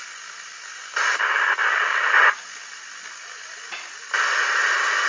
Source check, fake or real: real